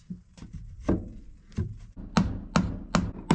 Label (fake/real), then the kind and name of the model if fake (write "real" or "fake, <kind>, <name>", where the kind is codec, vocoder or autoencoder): real